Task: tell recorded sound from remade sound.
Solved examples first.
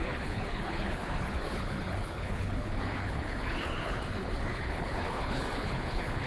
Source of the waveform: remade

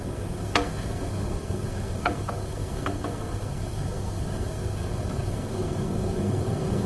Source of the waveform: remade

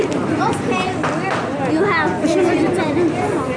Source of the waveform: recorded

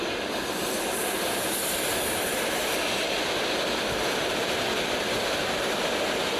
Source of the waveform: recorded